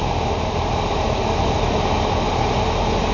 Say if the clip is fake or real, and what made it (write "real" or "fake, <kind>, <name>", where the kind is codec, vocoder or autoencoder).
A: real